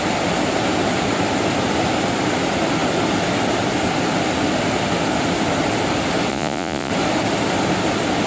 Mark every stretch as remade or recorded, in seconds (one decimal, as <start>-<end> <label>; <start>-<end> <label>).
0.0-6.3 recorded; 6.3-6.9 remade; 6.9-8.3 recorded